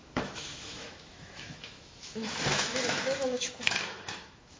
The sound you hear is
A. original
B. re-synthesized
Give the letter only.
B